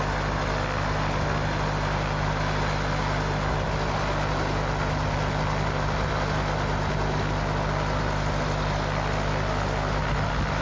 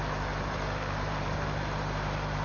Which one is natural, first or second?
first